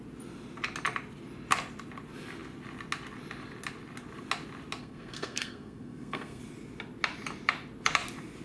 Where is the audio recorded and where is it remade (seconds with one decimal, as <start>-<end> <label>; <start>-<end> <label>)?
0.0-4.8 recorded; 4.8-6.4 remade; 6.4-8.4 recorded